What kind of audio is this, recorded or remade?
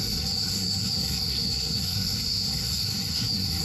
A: remade